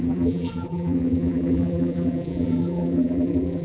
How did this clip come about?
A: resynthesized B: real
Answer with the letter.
A